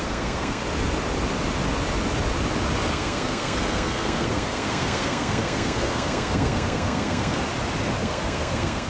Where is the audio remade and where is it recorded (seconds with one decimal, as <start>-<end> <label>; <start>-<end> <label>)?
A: 0.0-0.6 remade; 0.6-2.9 recorded; 2.9-7.4 remade; 7.4-8.0 recorded; 8.0-8.9 remade